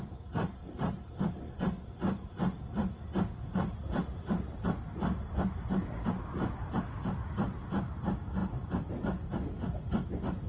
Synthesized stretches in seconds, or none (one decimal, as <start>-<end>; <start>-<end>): 0.6-2.3; 3.4-6.1